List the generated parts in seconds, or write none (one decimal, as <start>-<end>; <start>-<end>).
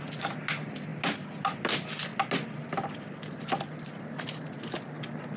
none